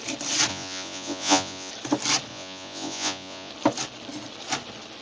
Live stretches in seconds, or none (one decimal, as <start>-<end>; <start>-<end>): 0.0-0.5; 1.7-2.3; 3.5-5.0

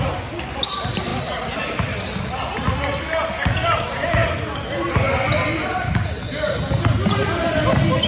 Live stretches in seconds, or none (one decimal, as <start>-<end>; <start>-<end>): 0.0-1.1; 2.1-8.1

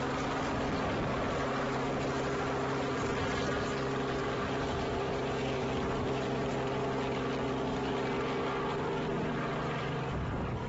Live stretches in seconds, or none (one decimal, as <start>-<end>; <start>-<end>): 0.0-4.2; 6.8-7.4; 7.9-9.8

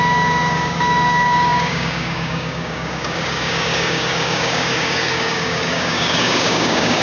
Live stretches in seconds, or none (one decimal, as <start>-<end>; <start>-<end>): none

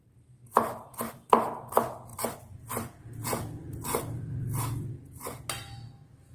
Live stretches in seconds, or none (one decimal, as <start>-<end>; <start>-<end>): 0.0-2.1; 4.9-6.3

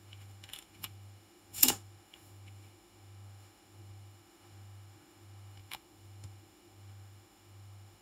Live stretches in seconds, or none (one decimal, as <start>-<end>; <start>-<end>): none